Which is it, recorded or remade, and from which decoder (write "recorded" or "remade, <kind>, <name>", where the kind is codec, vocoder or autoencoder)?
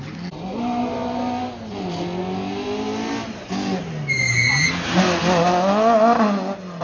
recorded